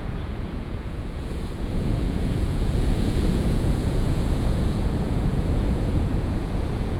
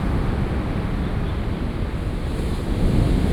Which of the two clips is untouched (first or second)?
second